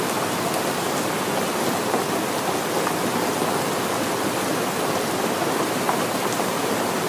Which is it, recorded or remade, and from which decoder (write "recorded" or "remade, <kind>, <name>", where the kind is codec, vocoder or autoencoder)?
recorded